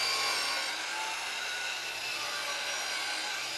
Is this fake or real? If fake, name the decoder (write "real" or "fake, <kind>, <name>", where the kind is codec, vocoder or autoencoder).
real